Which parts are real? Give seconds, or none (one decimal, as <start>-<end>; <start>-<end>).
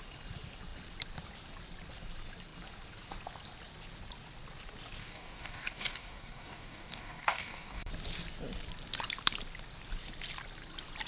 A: 0.0-5.0; 7.9-11.1